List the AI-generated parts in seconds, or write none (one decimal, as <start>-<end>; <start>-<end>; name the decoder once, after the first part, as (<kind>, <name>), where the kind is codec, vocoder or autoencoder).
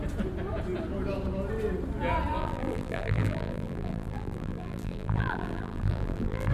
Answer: 2.4-6.5 (vocoder, BigVGAN v2)